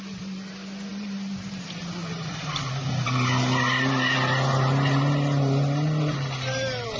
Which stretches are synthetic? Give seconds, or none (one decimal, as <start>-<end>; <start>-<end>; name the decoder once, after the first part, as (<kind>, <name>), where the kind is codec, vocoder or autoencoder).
0.9-2.7 (vocoder, BigVGAN v2)